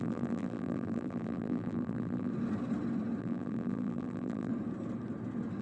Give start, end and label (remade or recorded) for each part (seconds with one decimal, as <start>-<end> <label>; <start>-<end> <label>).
0.0-2.3 remade; 2.3-3.2 recorded; 3.2-4.5 remade; 4.5-5.6 recorded